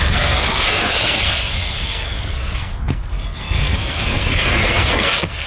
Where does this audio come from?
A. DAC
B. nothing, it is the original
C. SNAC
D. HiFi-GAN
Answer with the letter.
C